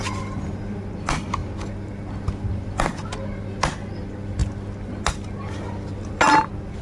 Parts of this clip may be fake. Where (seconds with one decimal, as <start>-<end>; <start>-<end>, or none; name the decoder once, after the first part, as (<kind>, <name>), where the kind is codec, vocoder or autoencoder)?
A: none